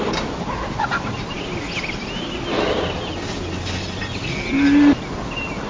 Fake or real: real